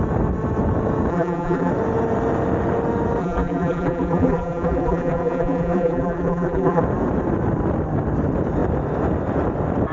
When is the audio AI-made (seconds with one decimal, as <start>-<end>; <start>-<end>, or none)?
1.1-1.7; 3.2-6.8